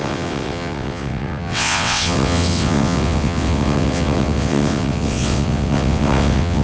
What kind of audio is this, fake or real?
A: fake